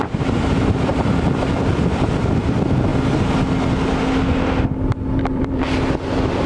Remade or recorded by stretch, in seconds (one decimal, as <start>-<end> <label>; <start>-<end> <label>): 0.0-2.9 remade; 2.9-5.2 recorded; 5.2-6.5 remade